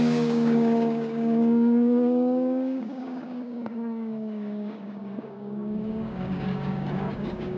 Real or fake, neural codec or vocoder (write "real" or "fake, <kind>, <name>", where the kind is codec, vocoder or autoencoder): fake, codec, DAC